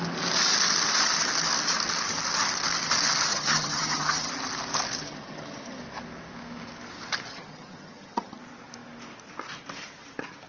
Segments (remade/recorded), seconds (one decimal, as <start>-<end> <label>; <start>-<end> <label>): 0.0-3.3 recorded; 3.3-4.3 remade; 4.3-5.0 recorded; 5.0-5.8 remade; 5.8-7.3 recorded; 7.3-8.4 remade; 8.4-10.5 recorded